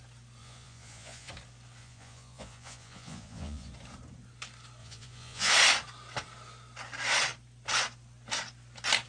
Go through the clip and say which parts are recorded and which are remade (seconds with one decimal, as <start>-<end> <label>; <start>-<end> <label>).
0.0-0.4 recorded; 0.4-1.3 remade; 1.3-1.8 recorded; 1.8-3.7 remade; 3.7-4.8 recorded; 4.8-5.5 remade; 5.5-9.1 recorded